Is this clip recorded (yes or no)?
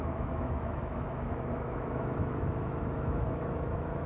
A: no